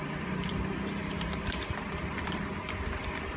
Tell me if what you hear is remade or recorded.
recorded